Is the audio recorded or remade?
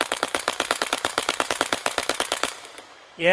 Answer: remade